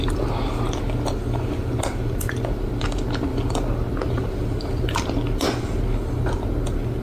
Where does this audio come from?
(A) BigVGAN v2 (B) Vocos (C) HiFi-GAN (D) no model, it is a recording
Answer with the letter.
D